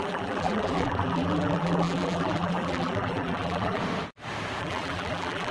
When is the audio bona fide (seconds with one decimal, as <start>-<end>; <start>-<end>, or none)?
3.8-4.6